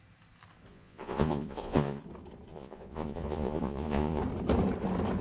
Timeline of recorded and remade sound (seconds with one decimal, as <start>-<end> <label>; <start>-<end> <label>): 0.0-0.7 recorded; 0.7-2.0 remade; 2.0-2.5 recorded; 2.5-4.2 remade; 4.2-5.2 recorded